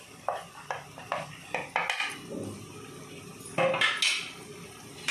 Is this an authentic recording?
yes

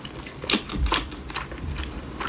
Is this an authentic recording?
yes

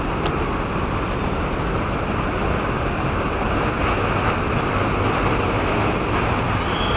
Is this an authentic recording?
yes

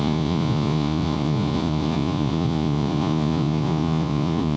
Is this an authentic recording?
no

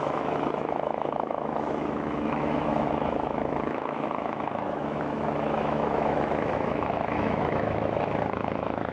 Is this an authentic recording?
no